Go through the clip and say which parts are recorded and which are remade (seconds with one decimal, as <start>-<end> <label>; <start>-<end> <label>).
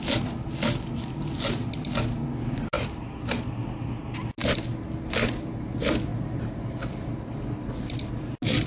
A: 0.0-8.7 recorded